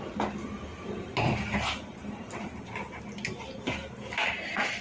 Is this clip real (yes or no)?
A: yes